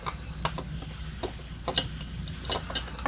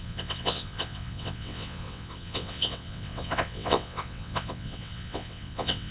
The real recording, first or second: first